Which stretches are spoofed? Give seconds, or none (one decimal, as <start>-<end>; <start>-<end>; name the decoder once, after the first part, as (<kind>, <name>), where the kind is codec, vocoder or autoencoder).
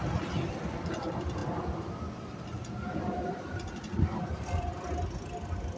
none